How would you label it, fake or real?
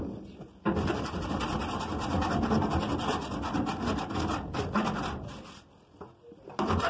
real